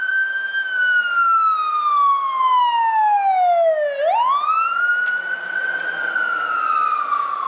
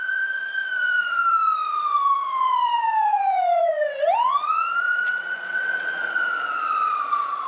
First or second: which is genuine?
first